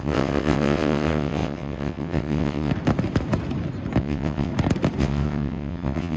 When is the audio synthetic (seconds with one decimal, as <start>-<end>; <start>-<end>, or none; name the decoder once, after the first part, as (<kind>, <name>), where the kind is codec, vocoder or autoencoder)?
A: 0.0-2.7 (vocoder, WaveNeXt); 4.0-4.5; 5.0-6.2